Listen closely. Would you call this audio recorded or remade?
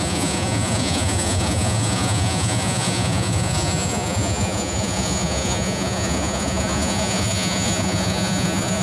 remade